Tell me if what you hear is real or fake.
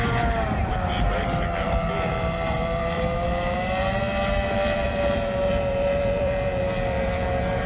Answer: fake